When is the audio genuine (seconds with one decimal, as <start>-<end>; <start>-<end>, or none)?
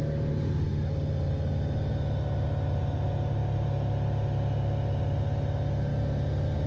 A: 0.0-6.7